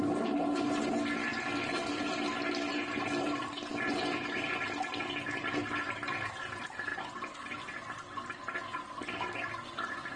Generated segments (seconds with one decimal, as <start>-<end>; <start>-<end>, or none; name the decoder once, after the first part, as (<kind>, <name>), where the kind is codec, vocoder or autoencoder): 6.9-7.5 (vocoder, BigVGAN v2)